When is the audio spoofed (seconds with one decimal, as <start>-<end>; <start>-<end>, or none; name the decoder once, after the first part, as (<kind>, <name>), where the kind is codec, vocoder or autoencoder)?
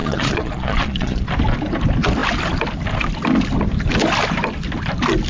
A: 0.0-1.3 (vocoder, Vocos)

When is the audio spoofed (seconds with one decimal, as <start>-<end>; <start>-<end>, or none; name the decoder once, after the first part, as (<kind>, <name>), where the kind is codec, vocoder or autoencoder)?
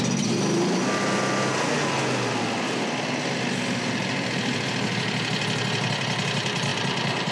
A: none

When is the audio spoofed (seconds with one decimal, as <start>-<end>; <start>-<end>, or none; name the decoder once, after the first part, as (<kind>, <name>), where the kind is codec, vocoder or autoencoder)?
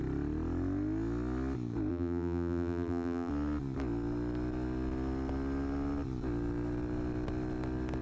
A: 1.9-3.3 (vocoder, BigVGAN v2)